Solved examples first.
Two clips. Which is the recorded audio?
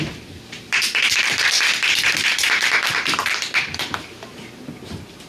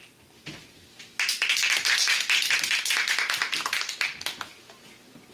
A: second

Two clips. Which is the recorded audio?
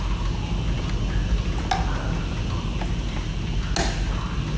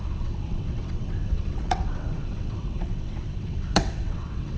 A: first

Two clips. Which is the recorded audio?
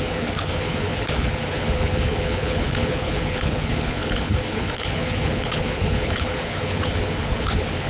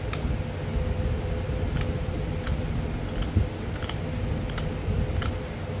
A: second